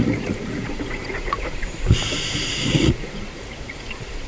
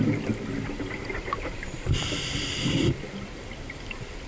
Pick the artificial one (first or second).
first